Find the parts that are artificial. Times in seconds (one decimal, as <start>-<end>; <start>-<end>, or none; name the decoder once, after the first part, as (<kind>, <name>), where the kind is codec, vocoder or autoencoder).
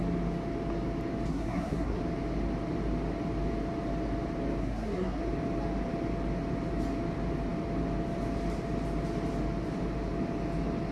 1.3-2.0 (codec, SNAC); 4.6-5.2